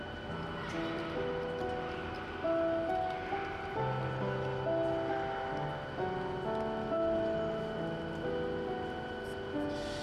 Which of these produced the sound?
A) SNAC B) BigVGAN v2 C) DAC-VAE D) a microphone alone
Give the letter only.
D